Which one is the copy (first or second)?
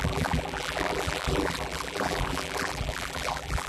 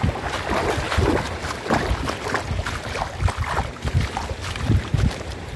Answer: first